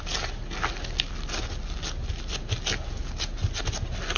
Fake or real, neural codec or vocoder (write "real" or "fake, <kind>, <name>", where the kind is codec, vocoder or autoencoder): real